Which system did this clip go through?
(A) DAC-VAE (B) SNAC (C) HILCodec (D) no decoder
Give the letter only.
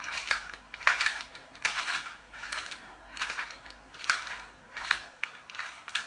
B